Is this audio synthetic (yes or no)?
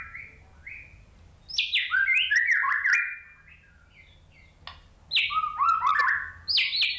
no